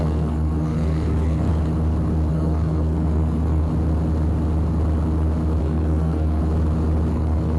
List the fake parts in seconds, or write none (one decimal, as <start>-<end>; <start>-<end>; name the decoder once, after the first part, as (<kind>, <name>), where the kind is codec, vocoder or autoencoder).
0.0-1.5 (codec, SNAC); 2.3-3.7; 5.6-6.4; 7.1-7.6